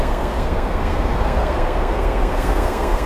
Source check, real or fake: fake